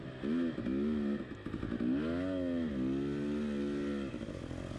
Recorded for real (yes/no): yes